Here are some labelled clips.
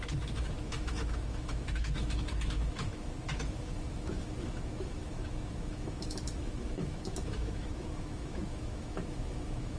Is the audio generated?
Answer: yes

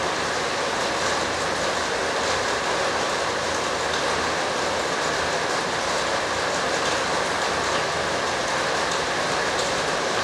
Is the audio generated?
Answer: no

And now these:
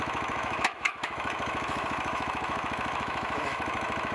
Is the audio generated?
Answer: yes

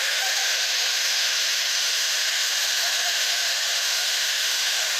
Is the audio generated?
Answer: yes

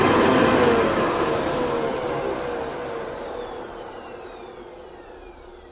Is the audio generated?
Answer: no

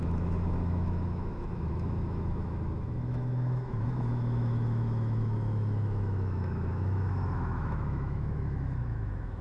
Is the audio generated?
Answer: yes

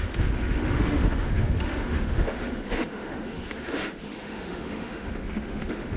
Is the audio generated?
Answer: yes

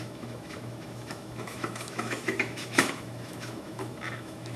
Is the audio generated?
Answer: yes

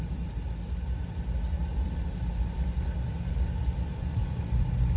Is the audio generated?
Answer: no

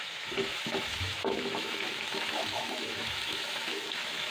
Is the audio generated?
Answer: yes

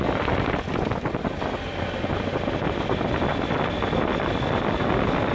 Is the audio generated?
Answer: no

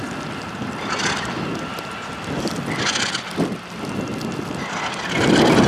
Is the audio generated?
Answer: no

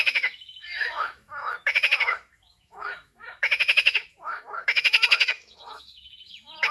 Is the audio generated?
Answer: yes